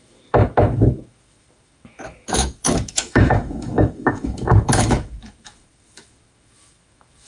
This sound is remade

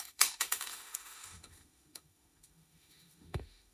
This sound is remade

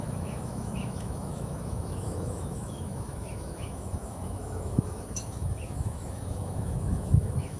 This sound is remade